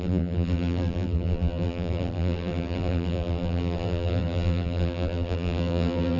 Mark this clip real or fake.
fake